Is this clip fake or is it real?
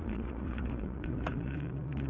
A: fake